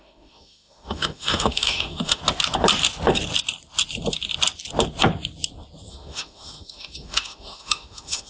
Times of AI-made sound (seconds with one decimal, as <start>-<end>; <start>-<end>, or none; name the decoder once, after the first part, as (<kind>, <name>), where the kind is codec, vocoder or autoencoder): 0.0-2.2 (autoencoder, DAC-VAE); 5.9-8.3